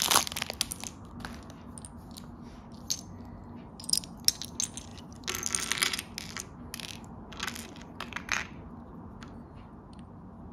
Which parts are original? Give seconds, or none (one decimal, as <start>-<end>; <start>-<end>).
0.0-10.5